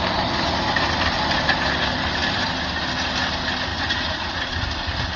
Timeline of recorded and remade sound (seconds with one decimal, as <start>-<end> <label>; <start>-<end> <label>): 0.0-3.7 recorded; 3.7-4.5 remade; 4.5-5.2 recorded